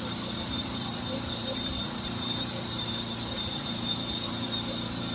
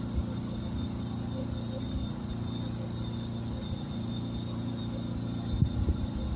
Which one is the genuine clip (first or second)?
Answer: second